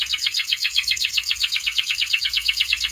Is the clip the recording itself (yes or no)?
no